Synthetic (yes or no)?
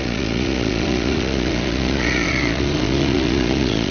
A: yes